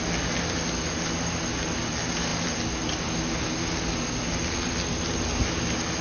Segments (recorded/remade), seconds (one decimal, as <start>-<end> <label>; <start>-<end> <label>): 0.0-6.0 recorded